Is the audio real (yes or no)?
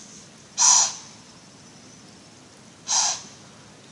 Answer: yes